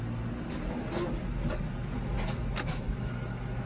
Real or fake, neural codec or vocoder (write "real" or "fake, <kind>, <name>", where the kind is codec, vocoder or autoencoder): real